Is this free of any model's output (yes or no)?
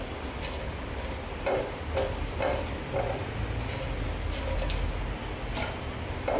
yes